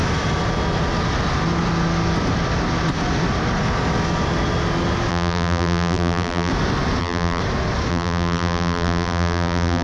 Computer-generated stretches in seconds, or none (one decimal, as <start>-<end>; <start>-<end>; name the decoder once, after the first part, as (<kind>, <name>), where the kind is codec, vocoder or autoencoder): 5.1-6.5 (vocoder, BigVGAN v2); 7.0-7.4; 7.9-9.8